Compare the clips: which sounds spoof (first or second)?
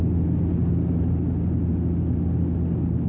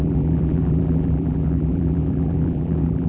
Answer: second